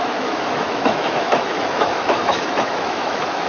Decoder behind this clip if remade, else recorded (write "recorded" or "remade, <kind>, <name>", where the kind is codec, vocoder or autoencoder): remade, autoencoder, DAC-VAE